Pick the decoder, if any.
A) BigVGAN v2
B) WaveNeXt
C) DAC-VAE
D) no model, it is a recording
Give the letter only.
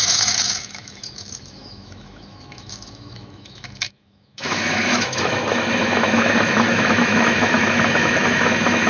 C